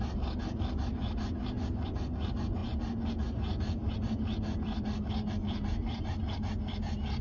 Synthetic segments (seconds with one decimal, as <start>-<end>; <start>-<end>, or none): none